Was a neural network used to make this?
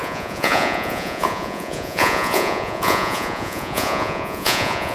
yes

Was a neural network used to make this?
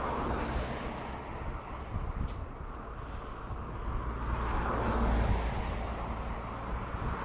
no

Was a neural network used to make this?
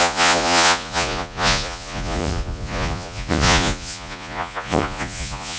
yes